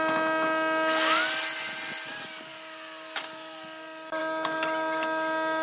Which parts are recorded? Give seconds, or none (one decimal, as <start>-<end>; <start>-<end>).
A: 0.0-5.6